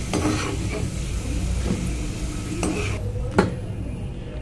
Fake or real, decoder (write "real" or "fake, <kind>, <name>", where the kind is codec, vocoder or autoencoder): real